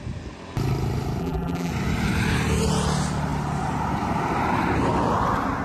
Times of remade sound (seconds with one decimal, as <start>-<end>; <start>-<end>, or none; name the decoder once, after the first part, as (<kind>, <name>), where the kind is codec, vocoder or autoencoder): 1.2-1.7 (vocoder, BigVGAN v2)